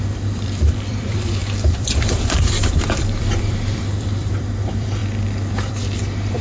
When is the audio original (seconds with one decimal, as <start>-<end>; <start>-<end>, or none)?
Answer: 5.0-5.7